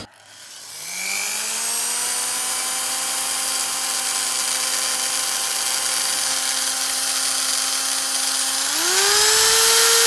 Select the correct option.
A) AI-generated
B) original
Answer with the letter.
B